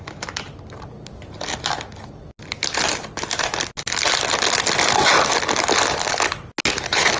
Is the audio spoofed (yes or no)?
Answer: no